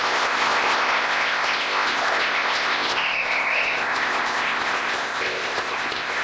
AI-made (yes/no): yes